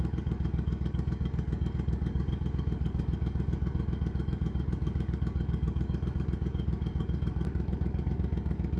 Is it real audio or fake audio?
fake